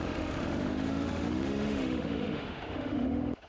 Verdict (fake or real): fake